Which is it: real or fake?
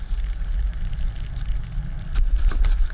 real